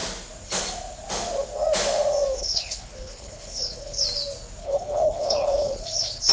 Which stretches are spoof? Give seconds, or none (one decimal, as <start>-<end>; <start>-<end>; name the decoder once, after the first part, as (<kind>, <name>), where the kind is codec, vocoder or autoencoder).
2.4-4.0 (codec, HILCodec); 4.6-6.3